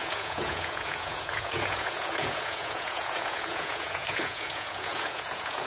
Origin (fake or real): fake